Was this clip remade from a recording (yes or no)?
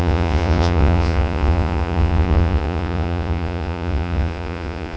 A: yes